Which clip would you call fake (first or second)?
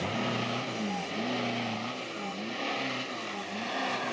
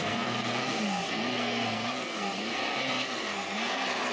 second